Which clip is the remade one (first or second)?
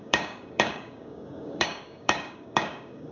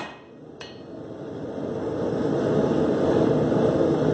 first